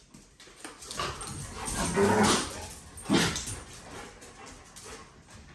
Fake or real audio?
real